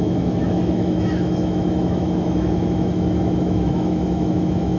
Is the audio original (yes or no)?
no